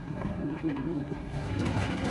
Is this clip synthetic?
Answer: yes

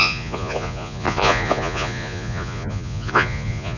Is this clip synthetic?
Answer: yes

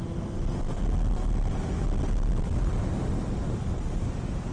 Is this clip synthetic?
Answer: no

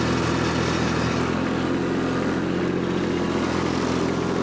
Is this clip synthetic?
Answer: no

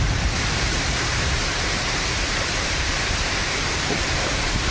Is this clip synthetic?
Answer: yes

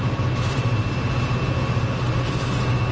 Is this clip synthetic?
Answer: no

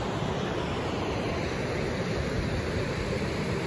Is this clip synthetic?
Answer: no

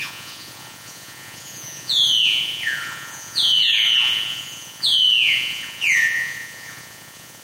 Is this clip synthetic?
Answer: yes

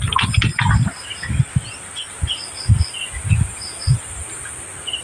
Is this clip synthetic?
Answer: no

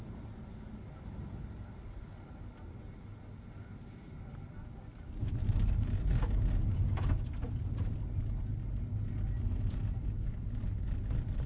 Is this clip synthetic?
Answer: no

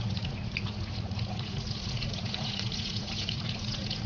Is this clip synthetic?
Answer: yes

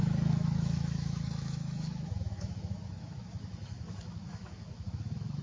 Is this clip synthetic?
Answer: yes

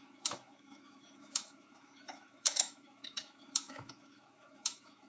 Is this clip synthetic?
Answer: yes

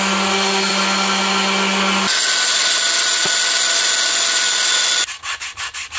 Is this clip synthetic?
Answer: no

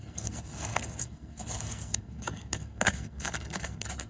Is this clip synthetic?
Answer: yes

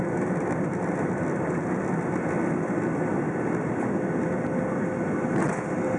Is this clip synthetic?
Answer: no